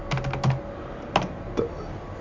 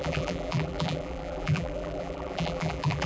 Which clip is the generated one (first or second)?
second